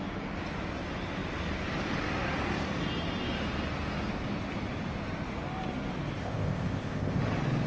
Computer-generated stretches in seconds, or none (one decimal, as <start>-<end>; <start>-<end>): 6.2-7.2